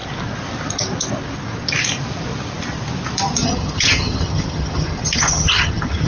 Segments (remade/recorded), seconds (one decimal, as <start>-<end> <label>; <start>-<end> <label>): 0.0-3.4 recorded; 3.4-6.1 remade